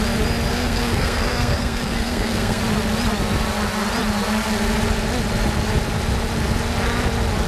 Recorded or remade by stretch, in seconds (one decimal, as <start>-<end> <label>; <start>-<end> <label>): 0.0-0.5 recorded; 0.5-2.6 remade; 2.6-7.5 recorded

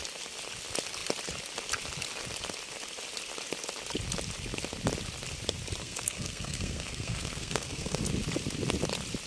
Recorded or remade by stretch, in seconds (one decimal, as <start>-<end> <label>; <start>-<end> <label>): 0.0-5.8 recorded; 5.8-8.0 remade; 8.0-9.3 recorded

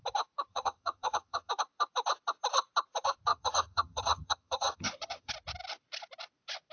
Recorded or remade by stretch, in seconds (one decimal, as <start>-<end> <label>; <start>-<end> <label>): 0.0-0.5 recorded; 0.5-1.5 remade; 1.5-3.3 recorded; 3.3-5.3 remade; 5.3-6.7 recorded

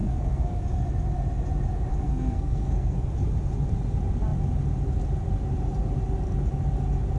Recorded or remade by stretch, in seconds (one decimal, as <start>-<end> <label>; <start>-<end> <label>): 0.0-0.6 remade; 0.6-1.9 recorded; 1.9-3.1 remade; 3.1-7.2 recorded